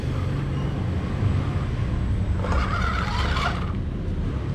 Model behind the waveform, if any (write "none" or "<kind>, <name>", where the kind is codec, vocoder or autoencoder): none